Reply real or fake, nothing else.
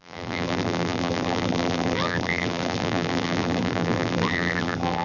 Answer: fake